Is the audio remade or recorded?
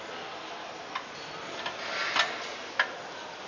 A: recorded